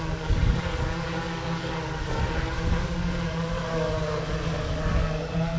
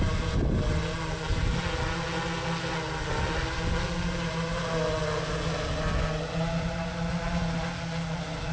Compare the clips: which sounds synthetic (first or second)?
first